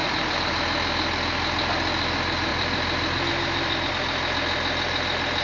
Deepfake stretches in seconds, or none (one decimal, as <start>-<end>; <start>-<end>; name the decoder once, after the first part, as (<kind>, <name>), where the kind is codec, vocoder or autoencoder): 0.0-0.5 (vocoder, BigVGAN v2); 2.5-3.9